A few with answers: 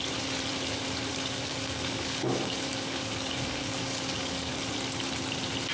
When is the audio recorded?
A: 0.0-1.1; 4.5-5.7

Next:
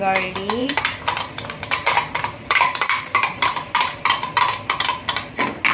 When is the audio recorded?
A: 0.0-0.6; 4.0-5.7

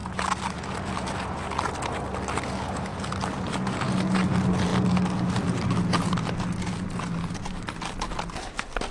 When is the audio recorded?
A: 0.0-8.9

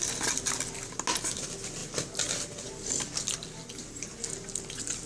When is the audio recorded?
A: 0.0-5.1

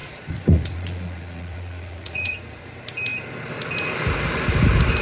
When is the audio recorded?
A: 2.7-5.0

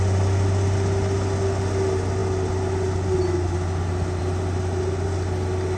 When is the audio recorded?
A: 0.0-5.8